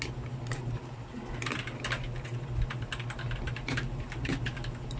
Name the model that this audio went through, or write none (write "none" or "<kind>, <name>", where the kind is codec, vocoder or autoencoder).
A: none